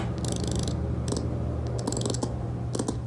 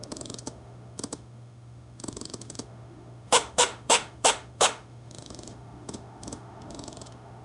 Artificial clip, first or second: second